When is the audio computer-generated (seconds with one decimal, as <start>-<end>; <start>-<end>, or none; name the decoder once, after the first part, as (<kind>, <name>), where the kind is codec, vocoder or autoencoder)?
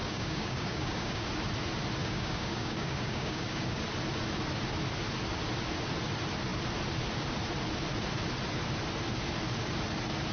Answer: 0.0-1.3 (codec, DAC); 2.0-3.8